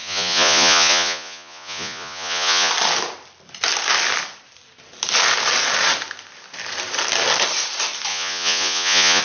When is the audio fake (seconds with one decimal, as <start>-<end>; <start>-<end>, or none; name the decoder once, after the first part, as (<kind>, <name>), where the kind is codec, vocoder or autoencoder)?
0.0-2.7 (vocoder, Vocos); 8.1-9.2